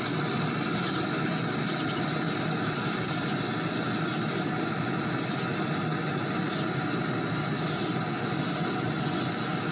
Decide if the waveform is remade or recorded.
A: recorded